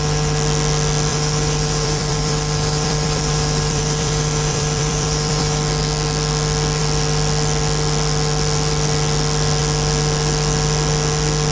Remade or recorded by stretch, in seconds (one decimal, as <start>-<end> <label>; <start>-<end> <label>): 0.0-1.1 recorded; 1.1-5.6 remade; 5.6-11.5 recorded